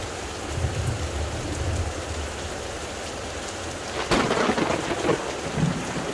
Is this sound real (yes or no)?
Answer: yes